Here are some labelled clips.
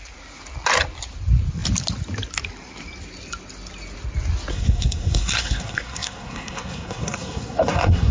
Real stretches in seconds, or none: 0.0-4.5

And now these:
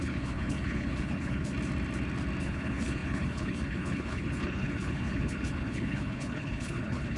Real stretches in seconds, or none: 1.5-2.4

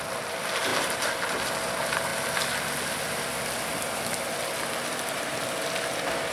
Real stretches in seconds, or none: 0.0-6.3

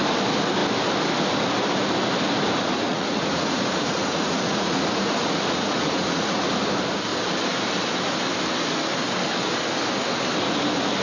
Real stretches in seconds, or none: 0.0-2.8; 6.5-11.0

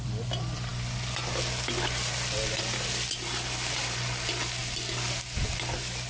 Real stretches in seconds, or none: 0.0-6.1

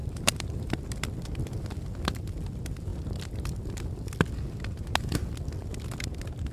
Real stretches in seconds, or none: 0.8-6.5

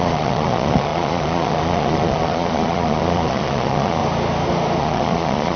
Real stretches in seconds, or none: 4.0-4.8

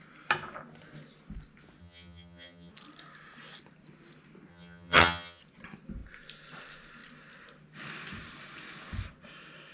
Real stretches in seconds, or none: 0.0-1.8; 2.7-4.5; 5.4-9.7